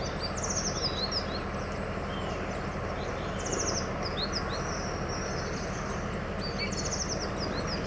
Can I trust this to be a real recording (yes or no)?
yes